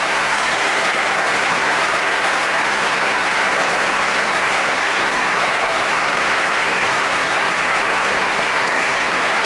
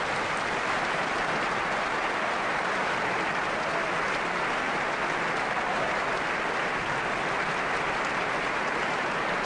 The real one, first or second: second